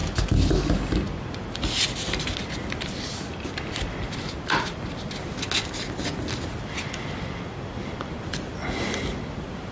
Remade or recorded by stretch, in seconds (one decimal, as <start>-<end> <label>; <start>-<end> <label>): 0.0-9.7 recorded